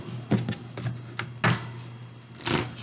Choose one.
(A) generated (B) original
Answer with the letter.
B